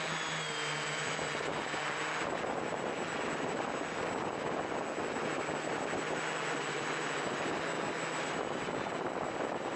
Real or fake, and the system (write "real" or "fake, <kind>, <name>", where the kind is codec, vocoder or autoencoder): real